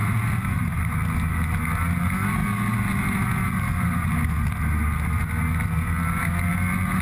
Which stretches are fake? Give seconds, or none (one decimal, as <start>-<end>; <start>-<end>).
none